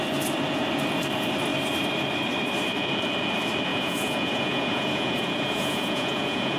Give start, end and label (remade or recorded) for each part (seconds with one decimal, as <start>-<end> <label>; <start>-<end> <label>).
0.0-3.7 recorded; 3.7-6.6 remade

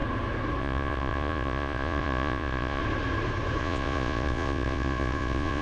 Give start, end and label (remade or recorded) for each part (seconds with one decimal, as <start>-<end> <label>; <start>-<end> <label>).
0.0-0.6 recorded; 0.6-2.8 remade; 2.8-3.6 recorded; 3.6-5.6 remade

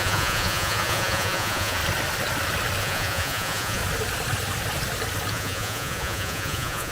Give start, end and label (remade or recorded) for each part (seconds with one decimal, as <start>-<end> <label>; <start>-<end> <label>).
0.0-1.8 remade; 1.8-2.8 recorded; 2.8-3.8 remade; 3.8-5.3 recorded; 5.3-6.9 remade

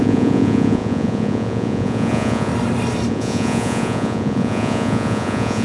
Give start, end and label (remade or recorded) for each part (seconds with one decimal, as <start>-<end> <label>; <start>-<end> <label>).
0.0-2.5 remade; 2.5-3.1 recorded; 3.1-5.6 remade

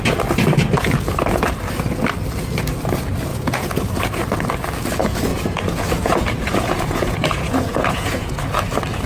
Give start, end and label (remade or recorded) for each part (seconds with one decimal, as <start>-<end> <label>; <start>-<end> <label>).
0.0-3.3 recorded; 3.3-4.0 remade; 4.0-5.3 recorded; 5.3-8.4 remade; 8.4-9.1 recorded

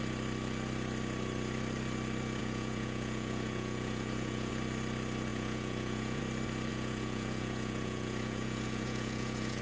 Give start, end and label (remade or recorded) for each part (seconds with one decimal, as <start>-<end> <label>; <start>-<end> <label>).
0.0-2.4 recorded; 2.4-4.5 remade; 4.5-5.3 recorded; 5.3-6.2 remade; 6.2-6.7 recorded; 6.7-9.6 remade

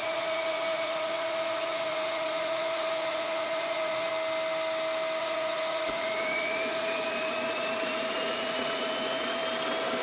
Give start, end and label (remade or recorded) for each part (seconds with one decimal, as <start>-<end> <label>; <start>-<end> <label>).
0.0-4.1 remade; 4.1-5.2 recorded; 5.2-9.4 remade; 9.4-10.0 recorded